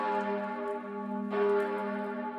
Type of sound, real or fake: real